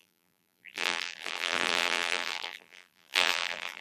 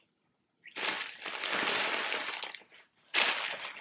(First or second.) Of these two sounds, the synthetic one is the first